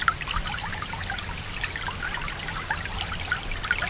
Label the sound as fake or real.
real